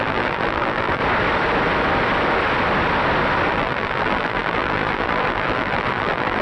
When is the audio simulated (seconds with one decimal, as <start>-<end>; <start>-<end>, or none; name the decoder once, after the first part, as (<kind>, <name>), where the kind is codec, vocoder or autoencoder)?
0.0-1.0 (vocoder, BigVGAN v2); 3.5-6.4

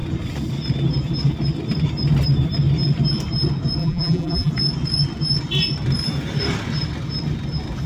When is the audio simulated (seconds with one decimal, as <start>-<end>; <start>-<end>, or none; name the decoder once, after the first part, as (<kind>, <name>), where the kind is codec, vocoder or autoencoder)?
3.8-4.5 (vocoder, BigVGAN v2)